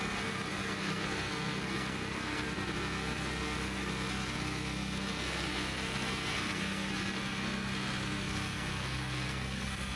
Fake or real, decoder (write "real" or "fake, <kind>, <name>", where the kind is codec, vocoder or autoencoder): fake, codec, SNAC